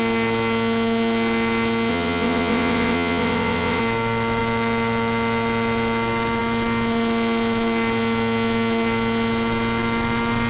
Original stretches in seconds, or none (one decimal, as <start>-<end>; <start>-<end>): 0.0-1.9; 3.8-10.5